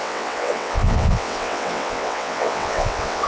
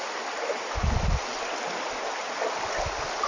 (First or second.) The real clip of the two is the second